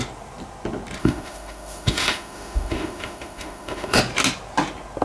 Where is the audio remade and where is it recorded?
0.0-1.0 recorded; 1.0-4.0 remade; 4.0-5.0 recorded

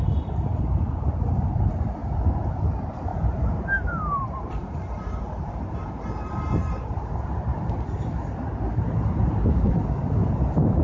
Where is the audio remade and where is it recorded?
0.0-3.1 recorded; 3.1-7.1 remade; 7.1-10.8 recorded